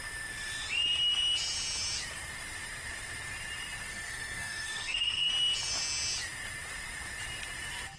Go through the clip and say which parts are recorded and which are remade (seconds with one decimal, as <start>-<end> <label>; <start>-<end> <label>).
0.0-3.9 recorded; 3.9-5.3 remade; 5.3-8.0 recorded